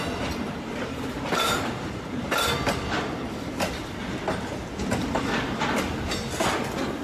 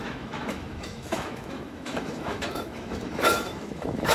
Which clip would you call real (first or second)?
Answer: first